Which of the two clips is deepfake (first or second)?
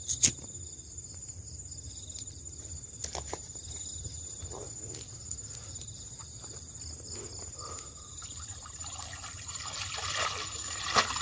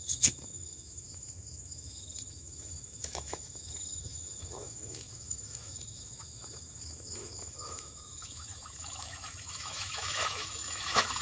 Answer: second